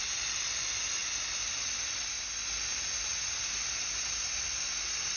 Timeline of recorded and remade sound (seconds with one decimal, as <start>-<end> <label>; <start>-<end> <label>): 0.0-5.2 recorded